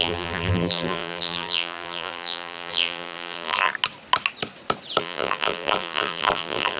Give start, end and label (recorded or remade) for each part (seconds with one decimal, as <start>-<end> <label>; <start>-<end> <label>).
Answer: 0.0-3.7 remade; 3.7-5.0 recorded; 5.0-6.8 remade